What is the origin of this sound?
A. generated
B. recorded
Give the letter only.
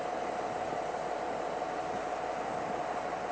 B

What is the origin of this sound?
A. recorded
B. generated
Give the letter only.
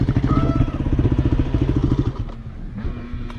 A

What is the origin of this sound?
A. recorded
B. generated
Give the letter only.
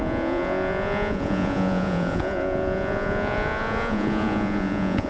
B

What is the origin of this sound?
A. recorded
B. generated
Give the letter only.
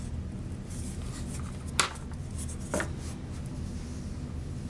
A